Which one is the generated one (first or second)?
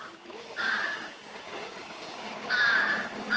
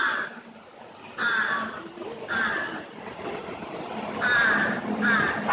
first